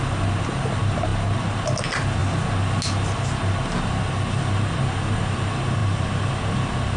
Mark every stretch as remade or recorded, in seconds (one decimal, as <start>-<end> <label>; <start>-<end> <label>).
0.0-5.8 recorded; 5.8-6.3 remade; 6.3-7.0 recorded

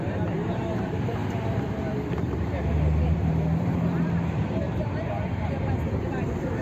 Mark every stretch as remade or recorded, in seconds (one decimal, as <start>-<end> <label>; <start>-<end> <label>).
0.0-1.2 remade; 1.2-3.1 recorded; 3.1-6.6 remade

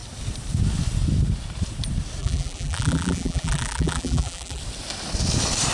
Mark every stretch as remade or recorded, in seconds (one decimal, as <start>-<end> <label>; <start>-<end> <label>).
0.0-2.2 recorded; 2.2-4.6 remade; 4.6-5.7 recorded

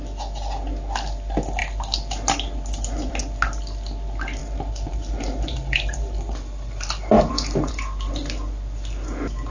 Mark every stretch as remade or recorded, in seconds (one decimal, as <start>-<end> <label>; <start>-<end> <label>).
0.0-4.4 recorded; 4.4-7.7 remade; 7.7-9.5 recorded